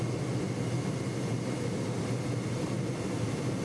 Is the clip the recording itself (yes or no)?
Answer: yes